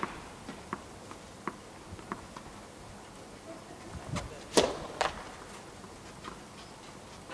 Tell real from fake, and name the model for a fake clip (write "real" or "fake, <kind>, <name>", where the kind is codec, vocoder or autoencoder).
real